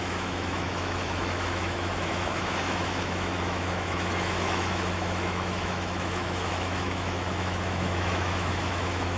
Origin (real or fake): fake